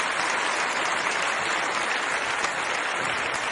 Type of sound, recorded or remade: recorded